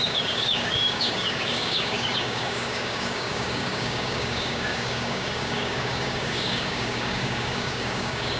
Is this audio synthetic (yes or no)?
yes